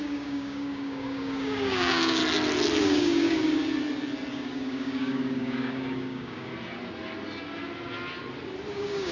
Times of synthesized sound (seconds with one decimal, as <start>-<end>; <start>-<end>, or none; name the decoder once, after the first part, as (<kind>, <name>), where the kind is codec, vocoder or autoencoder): 0.0-2.2 (codec, DAC); 2.8-3.6; 4.3-6.5; 8.7-9.1